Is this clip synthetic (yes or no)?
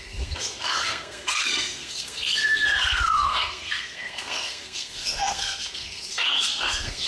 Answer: yes